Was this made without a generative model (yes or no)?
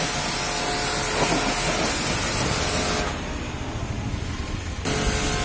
yes